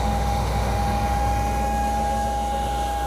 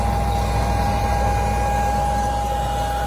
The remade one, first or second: first